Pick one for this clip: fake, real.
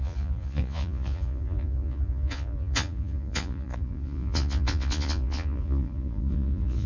fake